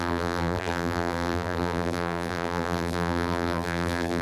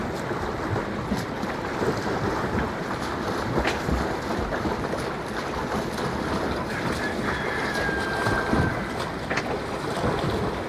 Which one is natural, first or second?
second